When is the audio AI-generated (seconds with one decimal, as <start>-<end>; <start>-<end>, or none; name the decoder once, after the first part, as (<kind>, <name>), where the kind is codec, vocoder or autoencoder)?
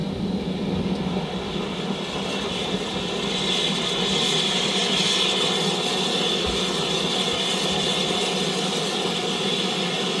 none